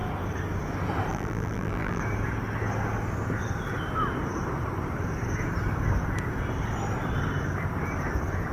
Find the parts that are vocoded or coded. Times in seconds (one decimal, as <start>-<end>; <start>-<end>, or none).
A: 1.1-2.0